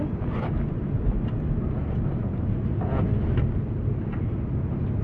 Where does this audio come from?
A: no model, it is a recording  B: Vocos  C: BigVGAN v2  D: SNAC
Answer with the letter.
A